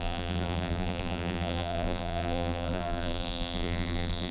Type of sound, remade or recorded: remade